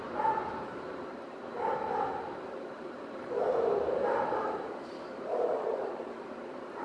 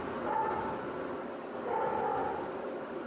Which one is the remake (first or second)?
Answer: first